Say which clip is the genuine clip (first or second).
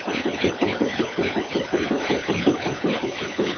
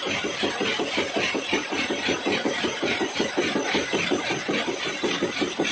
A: second